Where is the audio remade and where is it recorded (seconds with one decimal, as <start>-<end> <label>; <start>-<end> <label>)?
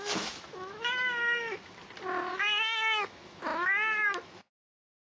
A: 0.0-1.8 remade; 1.8-2.3 recorded; 2.3-5.1 remade